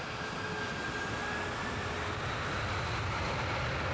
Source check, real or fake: real